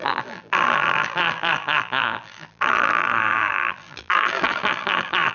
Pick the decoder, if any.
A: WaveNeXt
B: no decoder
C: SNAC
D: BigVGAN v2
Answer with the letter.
D